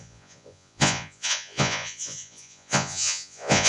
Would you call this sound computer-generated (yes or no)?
yes